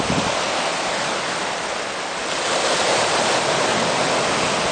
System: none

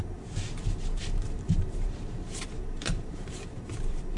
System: vocoder, BigVGAN v2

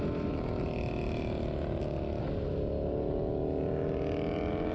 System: none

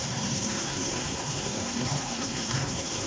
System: codec, SNAC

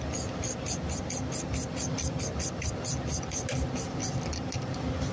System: none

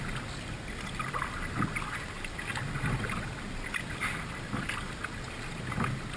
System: none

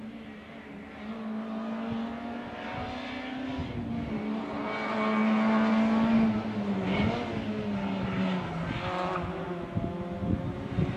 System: none